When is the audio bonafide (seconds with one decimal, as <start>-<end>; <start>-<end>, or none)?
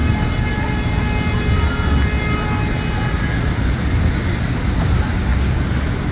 0.0-6.1